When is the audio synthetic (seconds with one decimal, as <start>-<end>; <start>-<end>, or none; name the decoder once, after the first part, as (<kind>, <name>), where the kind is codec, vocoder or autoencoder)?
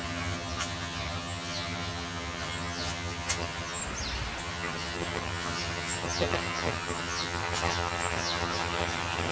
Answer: 0.0-3.8 (vocoder, HiFi-GAN); 4.4-9.3